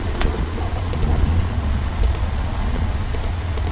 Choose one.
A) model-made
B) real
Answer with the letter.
A